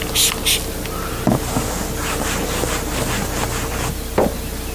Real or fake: real